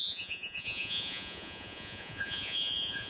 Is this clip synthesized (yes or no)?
yes